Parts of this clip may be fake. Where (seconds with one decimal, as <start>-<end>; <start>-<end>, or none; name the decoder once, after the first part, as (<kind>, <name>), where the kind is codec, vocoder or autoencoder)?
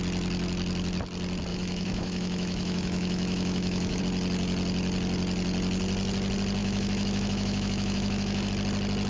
1.5-4.0 (autoencoder, DAC-VAE); 6.6-8.5